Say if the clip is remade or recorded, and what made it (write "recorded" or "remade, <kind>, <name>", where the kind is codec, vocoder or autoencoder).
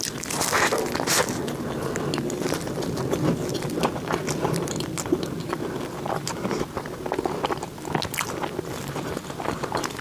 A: recorded